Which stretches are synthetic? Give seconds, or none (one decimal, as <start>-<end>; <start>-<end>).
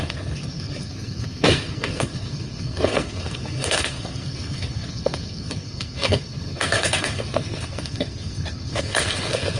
0.0-9.6